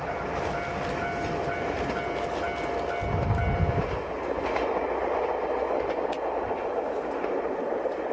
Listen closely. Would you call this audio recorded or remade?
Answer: recorded